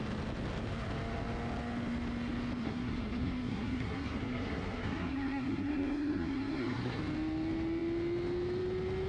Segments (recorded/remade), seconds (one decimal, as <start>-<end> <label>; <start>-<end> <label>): 0.0-2.6 recorded; 2.6-7.0 remade; 7.0-9.1 recorded